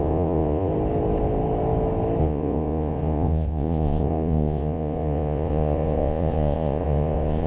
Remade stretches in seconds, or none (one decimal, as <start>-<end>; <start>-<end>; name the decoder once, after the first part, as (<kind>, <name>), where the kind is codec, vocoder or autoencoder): 0.0-0.7 (vocoder, Vocos); 2.2-7.5